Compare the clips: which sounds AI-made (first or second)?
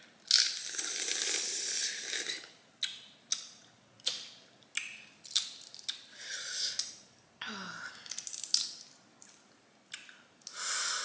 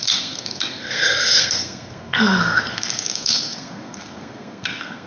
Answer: second